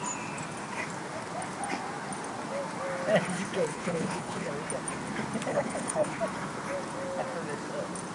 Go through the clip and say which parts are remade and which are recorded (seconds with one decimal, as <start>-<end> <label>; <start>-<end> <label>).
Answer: 0.0-3.7 recorded; 3.7-4.5 remade; 4.5-5.5 recorded; 5.5-6.2 remade; 6.2-8.1 recorded